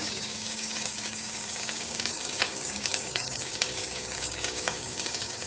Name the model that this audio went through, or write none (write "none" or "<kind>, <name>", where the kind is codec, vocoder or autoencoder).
codec, DAC